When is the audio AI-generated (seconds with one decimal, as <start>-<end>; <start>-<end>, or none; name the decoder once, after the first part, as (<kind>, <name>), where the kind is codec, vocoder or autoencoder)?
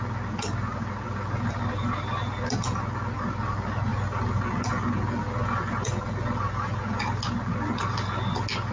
none